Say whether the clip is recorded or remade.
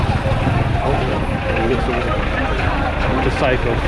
recorded